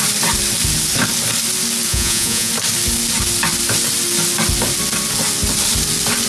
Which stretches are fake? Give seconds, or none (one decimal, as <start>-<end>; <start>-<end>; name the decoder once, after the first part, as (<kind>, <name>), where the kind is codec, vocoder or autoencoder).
1.9-2.5 (vocoder, Vocos)